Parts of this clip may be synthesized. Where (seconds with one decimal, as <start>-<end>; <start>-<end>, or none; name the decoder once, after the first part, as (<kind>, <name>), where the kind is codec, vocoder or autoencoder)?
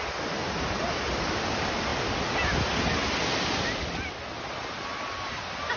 none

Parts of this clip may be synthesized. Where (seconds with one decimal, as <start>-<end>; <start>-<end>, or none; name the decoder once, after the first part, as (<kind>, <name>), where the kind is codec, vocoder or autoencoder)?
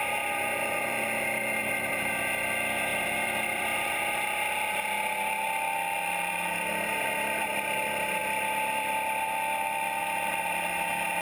none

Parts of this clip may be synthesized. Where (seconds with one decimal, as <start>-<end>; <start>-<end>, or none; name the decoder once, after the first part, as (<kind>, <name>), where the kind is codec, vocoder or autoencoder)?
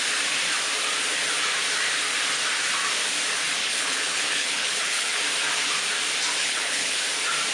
3.6-5.2 (codec, HILCodec); 6.4-7.0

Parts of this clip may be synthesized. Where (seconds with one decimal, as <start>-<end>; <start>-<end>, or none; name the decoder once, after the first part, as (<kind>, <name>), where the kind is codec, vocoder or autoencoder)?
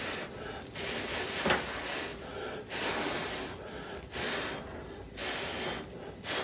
none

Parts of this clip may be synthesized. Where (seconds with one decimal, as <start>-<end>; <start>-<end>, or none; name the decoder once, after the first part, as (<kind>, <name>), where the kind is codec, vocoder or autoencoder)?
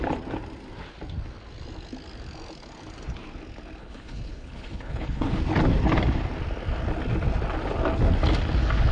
3.8-5.3 (codec, HILCodec)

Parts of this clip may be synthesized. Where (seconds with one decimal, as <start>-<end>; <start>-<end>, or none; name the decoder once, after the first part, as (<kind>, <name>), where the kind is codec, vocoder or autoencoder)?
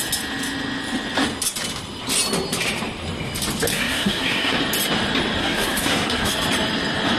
3.7-4.6 (codec, SNAC); 5.4-6.3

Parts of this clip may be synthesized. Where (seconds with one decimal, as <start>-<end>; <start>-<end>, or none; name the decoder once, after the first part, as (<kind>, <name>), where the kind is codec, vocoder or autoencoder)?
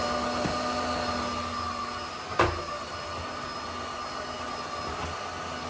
none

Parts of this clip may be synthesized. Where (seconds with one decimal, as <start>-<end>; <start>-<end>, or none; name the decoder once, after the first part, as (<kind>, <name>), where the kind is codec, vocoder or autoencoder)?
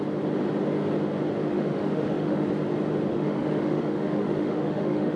1.4-2.5 (autoencoder, DAC-VAE); 3.1-5.2